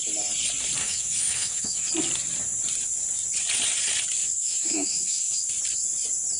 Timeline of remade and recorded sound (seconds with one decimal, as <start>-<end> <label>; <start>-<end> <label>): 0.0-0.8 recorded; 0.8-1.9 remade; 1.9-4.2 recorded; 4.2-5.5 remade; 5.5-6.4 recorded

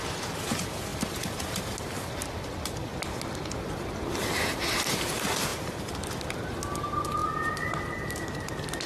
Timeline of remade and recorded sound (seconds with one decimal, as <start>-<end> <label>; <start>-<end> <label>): 0.0-8.9 recorded

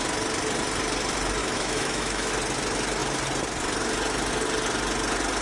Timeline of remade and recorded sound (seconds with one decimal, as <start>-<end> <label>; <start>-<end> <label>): 0.0-1.4 recorded; 1.4-2.3 remade; 2.3-5.4 recorded

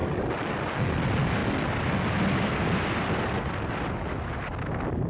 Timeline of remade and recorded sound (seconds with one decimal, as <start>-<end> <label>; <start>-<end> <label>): 0.0-5.1 recorded

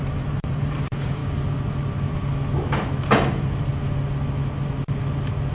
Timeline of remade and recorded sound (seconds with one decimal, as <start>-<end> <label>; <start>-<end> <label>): 0.0-1.2 remade; 1.2-2.8 recorded; 2.8-3.7 remade; 3.7-5.5 recorded

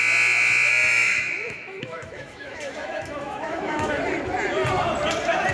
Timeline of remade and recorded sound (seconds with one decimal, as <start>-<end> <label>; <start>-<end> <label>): 0.0-0.7 recorded; 0.7-4.0 remade; 4.0-5.5 recorded

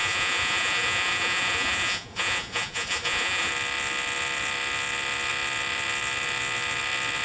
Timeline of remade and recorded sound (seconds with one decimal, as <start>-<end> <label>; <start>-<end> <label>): 0.0-3.5 remade; 3.5-7.2 recorded